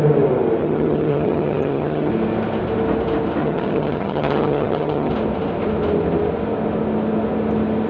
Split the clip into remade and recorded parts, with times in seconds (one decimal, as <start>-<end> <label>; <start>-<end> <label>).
0.0-0.6 recorded; 0.6-2.1 remade; 2.1-3.4 recorded; 3.4-5.1 remade; 5.1-7.9 recorded